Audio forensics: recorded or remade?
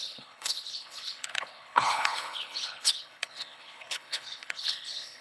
remade